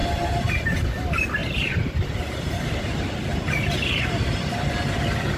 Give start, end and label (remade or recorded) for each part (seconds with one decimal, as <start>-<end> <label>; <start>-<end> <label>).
0.0-1.4 recorded; 1.4-2.8 remade; 2.8-3.3 recorded; 3.3-4.5 remade; 4.5-5.4 recorded